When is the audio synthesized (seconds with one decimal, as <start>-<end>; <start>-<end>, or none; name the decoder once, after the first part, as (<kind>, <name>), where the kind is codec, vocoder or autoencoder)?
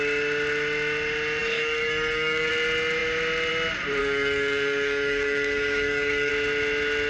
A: 1.4-2.5 (codec, DAC); 4.0-6.3